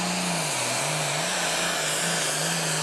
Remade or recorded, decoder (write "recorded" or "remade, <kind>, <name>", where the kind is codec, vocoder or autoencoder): recorded